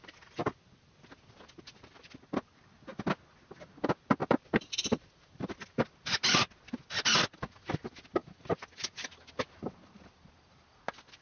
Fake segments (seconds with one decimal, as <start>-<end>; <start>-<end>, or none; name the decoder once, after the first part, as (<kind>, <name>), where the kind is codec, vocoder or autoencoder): 4.2-6.5 (vocoder, BigVGAN v2)